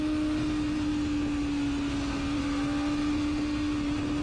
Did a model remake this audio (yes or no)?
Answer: no